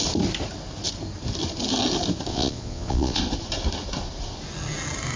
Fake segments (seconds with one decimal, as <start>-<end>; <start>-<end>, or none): 2.3-3.2